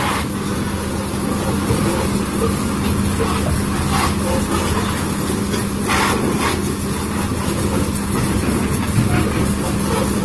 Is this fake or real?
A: real